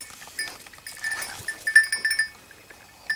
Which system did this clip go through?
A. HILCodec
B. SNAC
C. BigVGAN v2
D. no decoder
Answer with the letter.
D